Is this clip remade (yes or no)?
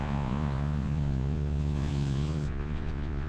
yes